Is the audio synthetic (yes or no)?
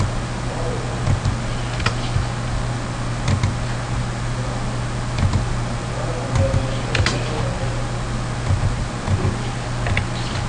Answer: no